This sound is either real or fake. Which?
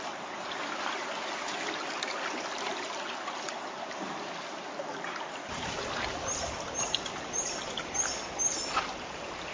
real